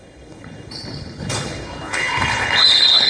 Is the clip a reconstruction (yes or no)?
yes